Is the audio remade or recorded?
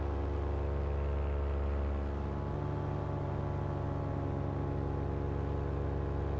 recorded